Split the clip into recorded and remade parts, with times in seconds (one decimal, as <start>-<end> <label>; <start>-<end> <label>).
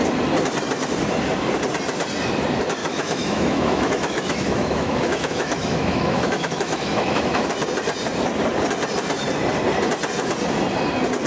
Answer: 0.0-2.8 recorded; 2.8-7.5 remade; 7.5-11.3 recorded